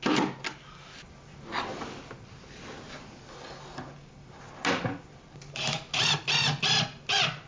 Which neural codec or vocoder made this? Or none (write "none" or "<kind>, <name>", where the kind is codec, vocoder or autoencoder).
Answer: none